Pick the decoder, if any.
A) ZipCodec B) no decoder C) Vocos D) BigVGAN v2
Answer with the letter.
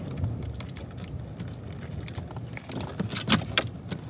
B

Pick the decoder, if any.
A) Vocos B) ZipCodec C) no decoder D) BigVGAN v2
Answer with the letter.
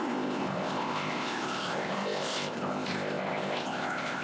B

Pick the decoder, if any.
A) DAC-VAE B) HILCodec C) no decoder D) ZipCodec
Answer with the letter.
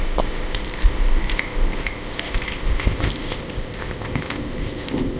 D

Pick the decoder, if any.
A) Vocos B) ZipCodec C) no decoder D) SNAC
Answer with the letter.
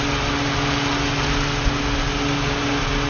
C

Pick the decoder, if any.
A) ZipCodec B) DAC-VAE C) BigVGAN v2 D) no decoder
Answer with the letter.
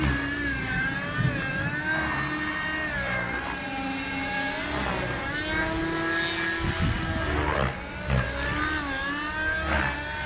D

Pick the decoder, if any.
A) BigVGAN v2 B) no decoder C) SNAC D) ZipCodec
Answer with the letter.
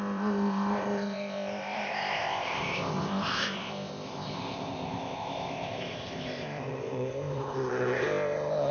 D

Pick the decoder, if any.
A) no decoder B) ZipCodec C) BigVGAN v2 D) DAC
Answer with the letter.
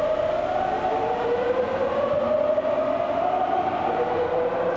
A